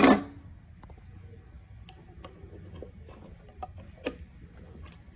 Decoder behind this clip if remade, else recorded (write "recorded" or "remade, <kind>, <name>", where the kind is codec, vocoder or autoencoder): recorded